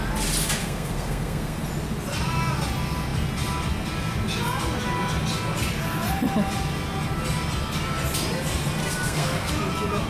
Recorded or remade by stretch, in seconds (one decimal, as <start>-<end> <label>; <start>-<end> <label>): 0.0-0.6 recorded; 0.6-1.6 remade; 1.6-8.8 recorded; 8.8-9.5 remade; 9.5-10.1 recorded